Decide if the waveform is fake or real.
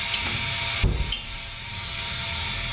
real